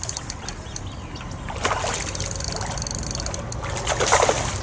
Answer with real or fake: real